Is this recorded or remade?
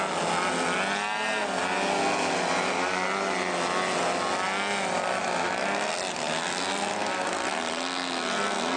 recorded